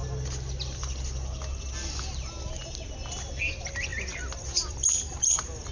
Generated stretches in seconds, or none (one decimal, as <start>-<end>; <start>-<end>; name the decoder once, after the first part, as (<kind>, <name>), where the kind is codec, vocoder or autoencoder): 3.4-3.9 (vocoder, BigVGAN v2); 4.7-5.7